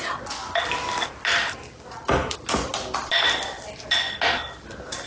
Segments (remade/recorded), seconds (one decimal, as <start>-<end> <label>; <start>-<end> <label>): 0.0-5.1 recorded